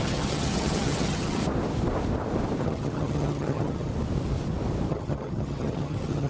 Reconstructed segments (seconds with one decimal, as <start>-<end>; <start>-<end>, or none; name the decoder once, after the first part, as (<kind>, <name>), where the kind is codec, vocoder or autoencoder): 0.0-1.4 (vocoder, HiFi-GAN); 2.6-3.9; 4.9-6.3